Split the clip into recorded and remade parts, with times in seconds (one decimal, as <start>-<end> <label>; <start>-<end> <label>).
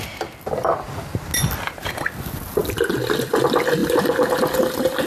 0.0-5.1 recorded